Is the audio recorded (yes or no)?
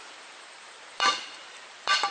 no